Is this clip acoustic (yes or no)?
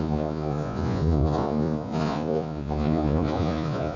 no